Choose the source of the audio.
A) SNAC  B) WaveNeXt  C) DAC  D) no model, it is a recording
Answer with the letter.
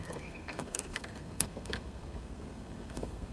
A